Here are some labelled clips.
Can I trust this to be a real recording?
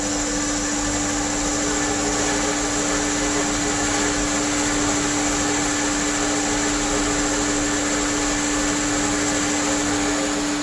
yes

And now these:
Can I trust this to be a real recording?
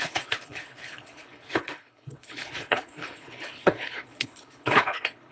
no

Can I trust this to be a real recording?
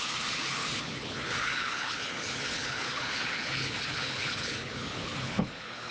no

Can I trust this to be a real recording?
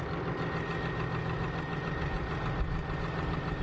yes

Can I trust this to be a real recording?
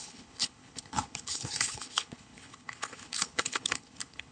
no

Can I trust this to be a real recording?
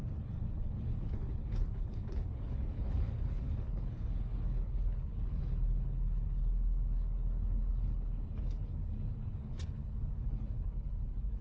no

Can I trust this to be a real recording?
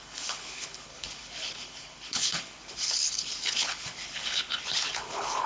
no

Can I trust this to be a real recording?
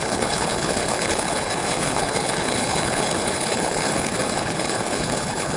no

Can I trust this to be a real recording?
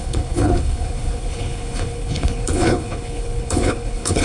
no